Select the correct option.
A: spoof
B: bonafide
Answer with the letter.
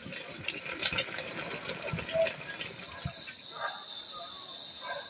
B